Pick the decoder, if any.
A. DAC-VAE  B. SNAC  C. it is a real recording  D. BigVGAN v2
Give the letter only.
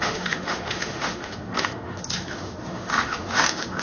A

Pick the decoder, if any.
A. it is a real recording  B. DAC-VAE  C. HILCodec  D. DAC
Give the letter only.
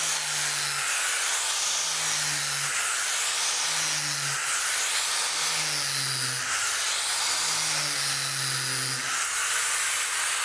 A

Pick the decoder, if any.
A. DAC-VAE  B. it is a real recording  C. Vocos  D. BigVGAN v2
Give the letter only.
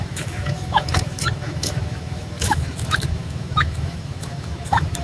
A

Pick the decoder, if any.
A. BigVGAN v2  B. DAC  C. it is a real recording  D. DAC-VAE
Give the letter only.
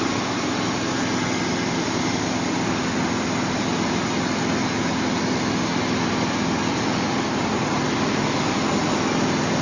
C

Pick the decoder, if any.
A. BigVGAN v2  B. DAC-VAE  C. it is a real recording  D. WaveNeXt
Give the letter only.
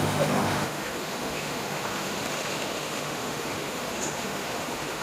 B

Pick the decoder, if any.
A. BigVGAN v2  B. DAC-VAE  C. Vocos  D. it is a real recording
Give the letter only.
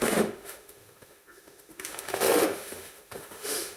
B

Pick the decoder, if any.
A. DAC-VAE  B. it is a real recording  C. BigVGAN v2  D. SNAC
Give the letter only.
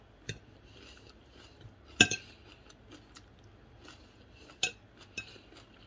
B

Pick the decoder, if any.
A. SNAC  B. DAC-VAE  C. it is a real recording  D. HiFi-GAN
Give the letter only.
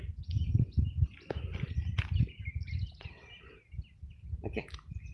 C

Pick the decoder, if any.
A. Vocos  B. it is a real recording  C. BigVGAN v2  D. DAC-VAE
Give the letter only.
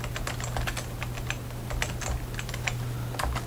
B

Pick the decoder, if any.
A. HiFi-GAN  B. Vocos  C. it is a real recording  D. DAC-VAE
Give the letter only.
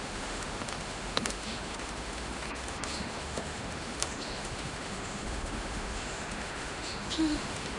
D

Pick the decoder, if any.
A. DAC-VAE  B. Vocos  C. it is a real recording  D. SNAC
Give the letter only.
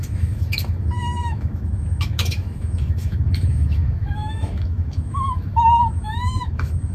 A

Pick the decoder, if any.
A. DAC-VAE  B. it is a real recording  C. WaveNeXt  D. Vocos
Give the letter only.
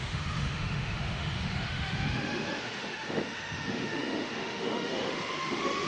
A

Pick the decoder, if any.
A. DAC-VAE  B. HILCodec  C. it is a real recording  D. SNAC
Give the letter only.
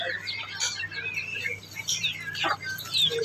C